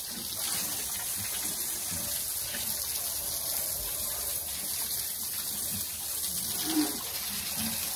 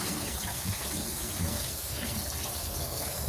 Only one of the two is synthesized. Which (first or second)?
second